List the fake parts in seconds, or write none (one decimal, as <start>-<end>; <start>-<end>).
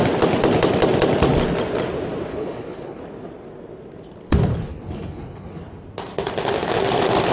2.3-3.0; 4.5-5.7